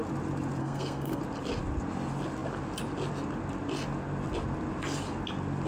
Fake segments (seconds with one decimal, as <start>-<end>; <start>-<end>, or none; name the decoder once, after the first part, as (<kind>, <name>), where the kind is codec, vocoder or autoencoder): 0.6-1.2 (codec, SNAC)

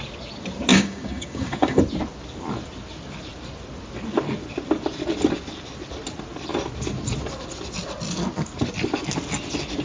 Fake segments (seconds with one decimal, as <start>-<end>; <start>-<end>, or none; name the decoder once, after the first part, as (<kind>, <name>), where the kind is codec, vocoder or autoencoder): 0.7-1.8 (codec, DAC)

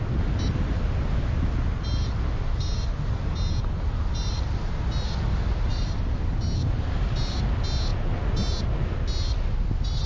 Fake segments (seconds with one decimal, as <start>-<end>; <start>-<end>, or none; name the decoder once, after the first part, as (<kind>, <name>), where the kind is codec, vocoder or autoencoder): 5.3-6.6 (vocoder, BigVGAN v2)

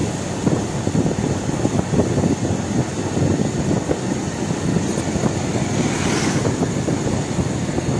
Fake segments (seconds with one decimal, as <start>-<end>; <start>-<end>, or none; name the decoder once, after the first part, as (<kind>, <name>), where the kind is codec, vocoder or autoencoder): none

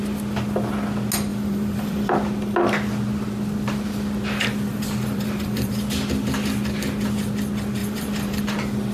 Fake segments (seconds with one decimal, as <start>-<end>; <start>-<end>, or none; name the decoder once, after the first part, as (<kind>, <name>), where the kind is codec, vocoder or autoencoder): 1.3-2.1 (vocoder, BigVGAN v2); 4.7-5.8; 7.8-8.4

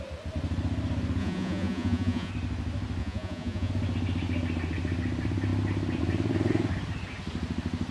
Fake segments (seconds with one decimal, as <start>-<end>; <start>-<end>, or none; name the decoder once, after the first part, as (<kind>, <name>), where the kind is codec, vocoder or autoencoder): 1.2-2.3 (vocoder, Vocos); 3.0-3.7